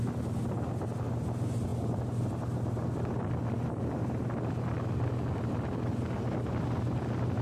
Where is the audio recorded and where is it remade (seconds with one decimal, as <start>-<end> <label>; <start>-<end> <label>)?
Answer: 0.0-7.4 recorded